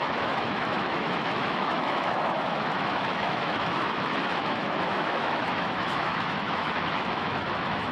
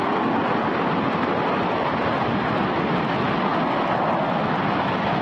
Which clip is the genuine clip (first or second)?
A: second